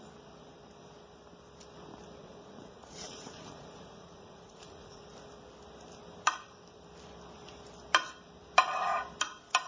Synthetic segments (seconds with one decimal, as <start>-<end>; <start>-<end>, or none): 2.2-5.0

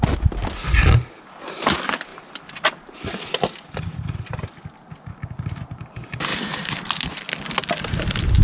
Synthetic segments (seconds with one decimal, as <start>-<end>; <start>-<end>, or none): none

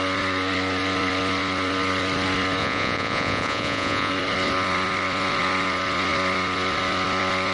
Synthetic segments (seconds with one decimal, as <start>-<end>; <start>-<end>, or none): 2.6-4.1

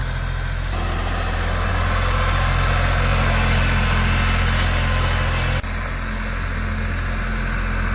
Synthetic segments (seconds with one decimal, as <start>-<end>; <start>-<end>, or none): none

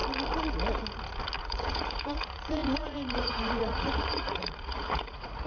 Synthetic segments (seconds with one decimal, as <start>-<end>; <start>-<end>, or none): 1.4-5.5

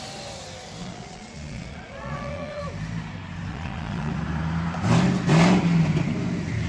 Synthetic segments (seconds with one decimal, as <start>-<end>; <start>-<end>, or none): 0.8-2.6; 3.5-4.1

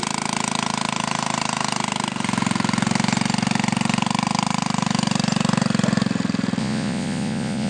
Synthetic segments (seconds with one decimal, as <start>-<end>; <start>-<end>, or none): 6.6-7.7